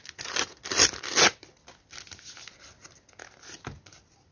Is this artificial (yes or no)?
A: no